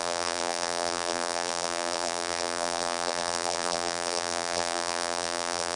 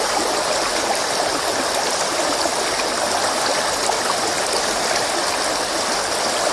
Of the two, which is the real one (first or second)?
second